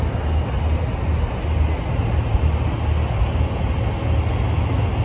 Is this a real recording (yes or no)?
yes